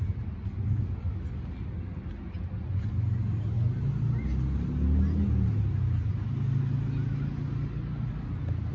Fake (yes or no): no